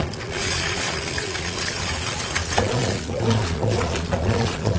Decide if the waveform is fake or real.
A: fake